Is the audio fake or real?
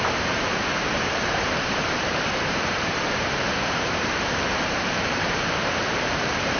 fake